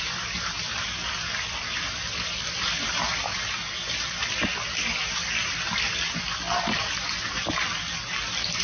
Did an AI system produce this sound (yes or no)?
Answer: no